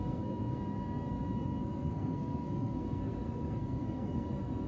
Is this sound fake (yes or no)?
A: yes